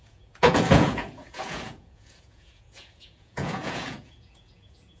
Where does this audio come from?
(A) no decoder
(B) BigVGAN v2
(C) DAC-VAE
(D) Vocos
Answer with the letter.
D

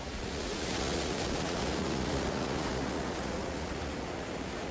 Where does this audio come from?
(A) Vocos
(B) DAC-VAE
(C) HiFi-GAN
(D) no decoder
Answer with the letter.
A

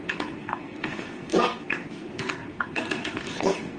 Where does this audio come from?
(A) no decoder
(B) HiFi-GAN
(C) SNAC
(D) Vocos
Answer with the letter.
C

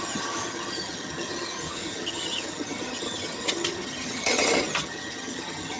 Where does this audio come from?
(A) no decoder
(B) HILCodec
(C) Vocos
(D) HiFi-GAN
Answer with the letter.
D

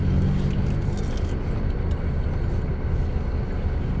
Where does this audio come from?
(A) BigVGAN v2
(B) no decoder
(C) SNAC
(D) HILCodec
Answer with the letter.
B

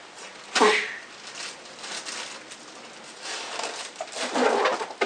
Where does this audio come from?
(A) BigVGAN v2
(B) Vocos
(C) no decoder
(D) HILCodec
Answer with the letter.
C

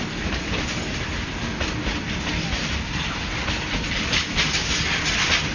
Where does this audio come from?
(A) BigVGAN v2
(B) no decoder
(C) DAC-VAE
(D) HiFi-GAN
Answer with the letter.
B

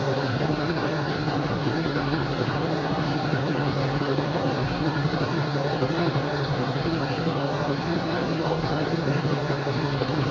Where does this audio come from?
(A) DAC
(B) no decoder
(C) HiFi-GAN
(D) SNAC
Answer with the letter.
D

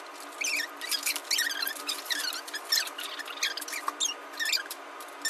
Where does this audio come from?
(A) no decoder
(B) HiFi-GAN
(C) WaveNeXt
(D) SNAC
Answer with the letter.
A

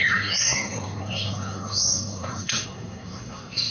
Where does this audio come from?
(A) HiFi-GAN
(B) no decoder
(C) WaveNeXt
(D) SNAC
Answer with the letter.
D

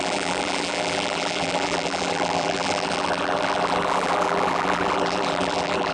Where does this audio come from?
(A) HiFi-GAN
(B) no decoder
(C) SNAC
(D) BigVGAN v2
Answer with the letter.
D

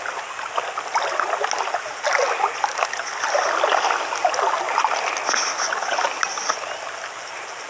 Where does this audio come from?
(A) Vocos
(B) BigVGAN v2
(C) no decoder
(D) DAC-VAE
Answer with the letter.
C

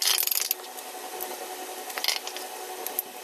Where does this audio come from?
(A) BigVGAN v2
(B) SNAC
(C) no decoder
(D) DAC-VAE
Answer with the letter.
C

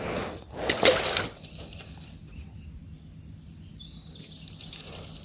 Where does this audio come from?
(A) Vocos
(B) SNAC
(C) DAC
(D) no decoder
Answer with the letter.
D